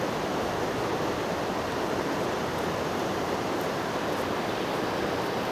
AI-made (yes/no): no